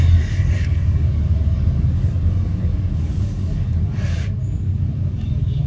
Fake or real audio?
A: fake